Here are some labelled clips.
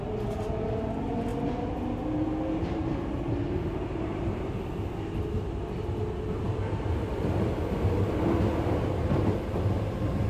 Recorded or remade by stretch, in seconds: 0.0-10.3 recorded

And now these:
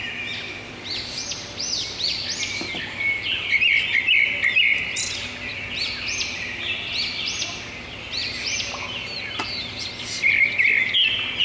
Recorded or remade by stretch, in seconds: 0.0-11.4 recorded

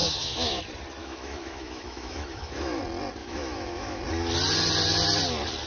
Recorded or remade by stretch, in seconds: 0.0-0.6 remade; 0.6-1.0 recorded; 1.0-2.8 remade; 2.8-3.2 recorded; 3.2-4.0 remade; 4.0-5.7 recorded

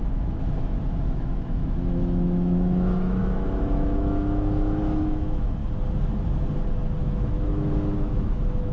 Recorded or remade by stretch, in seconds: 0.0-5.6 remade; 5.6-7.0 recorded; 7.0-8.7 remade

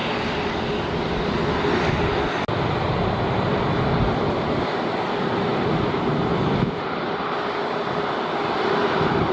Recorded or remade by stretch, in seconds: 0.0-9.3 recorded

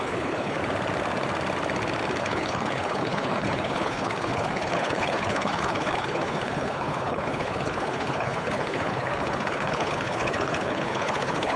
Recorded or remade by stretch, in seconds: 0.0-0.6 remade; 0.6-2.2 recorded; 2.2-11.6 remade

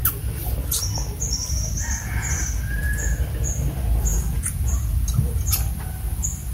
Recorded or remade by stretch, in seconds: 0.0-4.1 recorded; 4.1-4.7 remade; 4.7-6.5 recorded

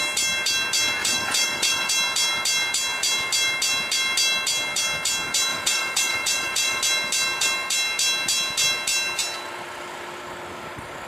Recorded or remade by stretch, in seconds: 0.0-1.0 recorded; 1.0-1.9 remade; 1.9-5.5 recorded; 5.5-6.8 remade; 6.8-11.1 recorded